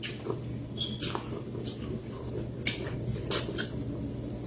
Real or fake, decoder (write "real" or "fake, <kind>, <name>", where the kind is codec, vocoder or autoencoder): real